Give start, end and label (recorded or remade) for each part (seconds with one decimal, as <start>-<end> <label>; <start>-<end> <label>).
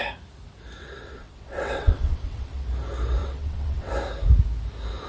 0.0-0.8 recorded; 0.8-2.6 remade; 2.6-3.2 recorded; 3.2-3.9 remade; 3.9-5.1 recorded